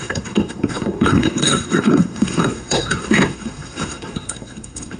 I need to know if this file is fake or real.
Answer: fake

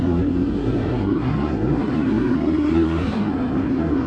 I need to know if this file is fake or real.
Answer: fake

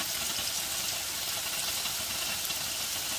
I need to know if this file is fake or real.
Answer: real